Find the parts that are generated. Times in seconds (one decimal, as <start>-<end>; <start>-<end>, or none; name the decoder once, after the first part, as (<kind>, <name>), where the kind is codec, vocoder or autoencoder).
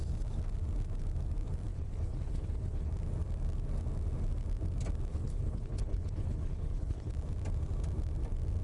1.7-2.9 (codec, HILCodec); 5.1-7.1